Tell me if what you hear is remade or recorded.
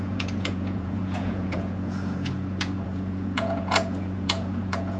remade